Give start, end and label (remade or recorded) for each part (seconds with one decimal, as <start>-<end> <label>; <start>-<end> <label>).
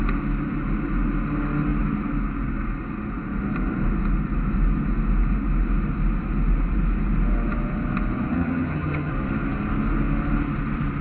0.0-8.3 recorded; 8.3-9.1 remade; 9.1-11.0 recorded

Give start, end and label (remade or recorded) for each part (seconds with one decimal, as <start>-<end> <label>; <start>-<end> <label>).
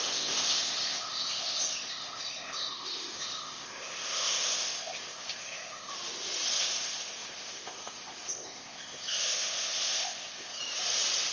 0.0-5.9 remade; 5.9-6.6 recorded; 6.6-10.6 remade; 10.6-11.3 recorded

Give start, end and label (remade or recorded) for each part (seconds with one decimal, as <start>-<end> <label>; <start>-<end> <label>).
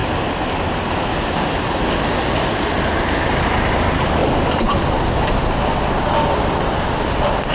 0.0-7.5 recorded